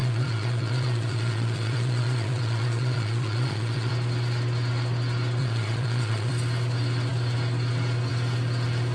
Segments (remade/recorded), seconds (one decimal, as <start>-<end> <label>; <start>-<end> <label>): 0.0-3.9 remade; 3.9-5.4 recorded; 5.4-6.3 remade; 6.3-8.9 recorded